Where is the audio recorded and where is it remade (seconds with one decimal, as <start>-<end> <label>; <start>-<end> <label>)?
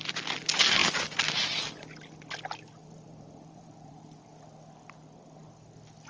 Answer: 0.0-2.8 recorded; 2.8-4.0 remade; 4.0-6.1 recorded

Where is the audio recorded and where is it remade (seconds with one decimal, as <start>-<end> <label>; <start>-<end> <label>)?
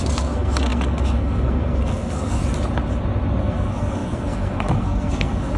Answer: 0.0-2.4 remade; 2.4-3.4 recorded; 3.4-5.6 remade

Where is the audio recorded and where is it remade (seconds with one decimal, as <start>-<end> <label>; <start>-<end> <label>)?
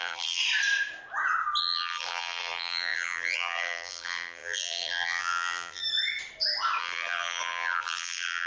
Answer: 0.0-0.4 remade; 0.4-1.6 recorded; 1.6-5.8 remade; 5.8-6.8 recorded; 6.8-8.5 remade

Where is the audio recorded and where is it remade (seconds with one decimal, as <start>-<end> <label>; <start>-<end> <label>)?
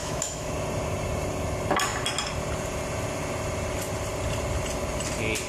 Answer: 0.0-0.5 remade; 0.5-5.5 recorded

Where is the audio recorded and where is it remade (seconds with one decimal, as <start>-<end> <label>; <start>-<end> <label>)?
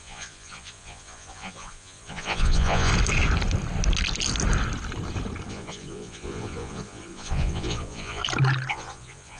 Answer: 0.0-2.9 remade; 2.9-5.5 recorded; 5.5-8.2 remade; 8.2-8.7 recorded; 8.7-9.4 remade